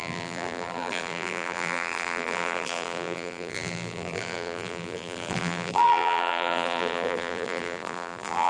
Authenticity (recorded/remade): remade